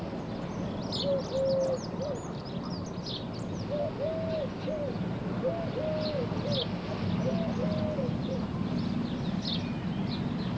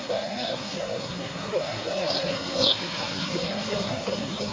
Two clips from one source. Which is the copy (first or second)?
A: second